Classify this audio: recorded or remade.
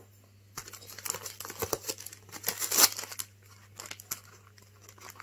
recorded